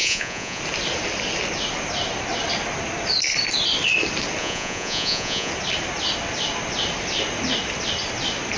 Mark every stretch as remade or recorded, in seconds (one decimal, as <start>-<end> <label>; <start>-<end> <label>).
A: 0.0-0.6 remade; 0.6-4.4 recorded; 4.4-5.5 remade; 5.5-8.6 recorded